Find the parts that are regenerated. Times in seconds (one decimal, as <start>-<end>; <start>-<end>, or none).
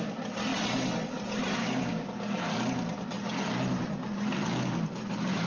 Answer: 1.6-2.1